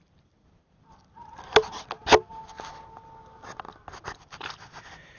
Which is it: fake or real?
real